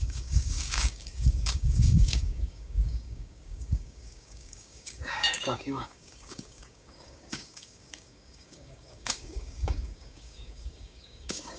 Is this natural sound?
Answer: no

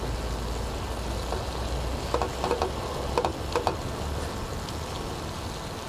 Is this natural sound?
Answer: yes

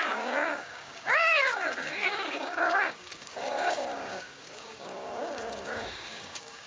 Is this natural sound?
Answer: no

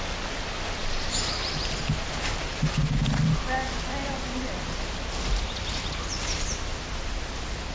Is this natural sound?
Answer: yes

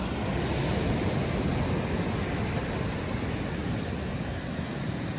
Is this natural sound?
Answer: yes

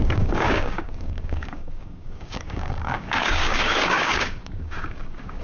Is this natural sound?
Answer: no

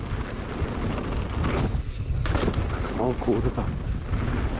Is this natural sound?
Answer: yes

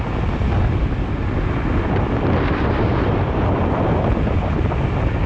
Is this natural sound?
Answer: yes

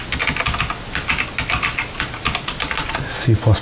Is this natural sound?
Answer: yes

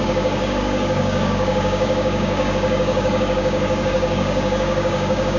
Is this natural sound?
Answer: no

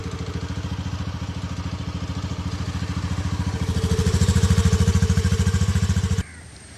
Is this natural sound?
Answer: yes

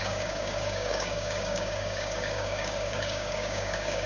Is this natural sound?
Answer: no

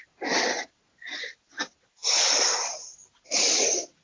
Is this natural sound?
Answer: yes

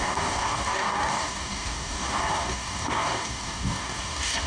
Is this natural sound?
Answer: no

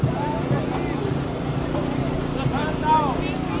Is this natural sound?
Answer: yes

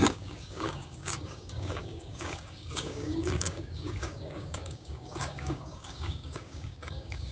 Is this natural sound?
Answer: no